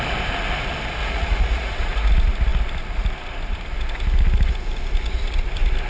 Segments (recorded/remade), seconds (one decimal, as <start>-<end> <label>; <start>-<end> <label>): 0.0-1.0 recorded; 1.0-2.1 remade; 2.1-5.9 recorded